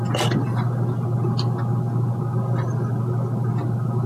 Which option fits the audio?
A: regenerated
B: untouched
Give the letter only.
B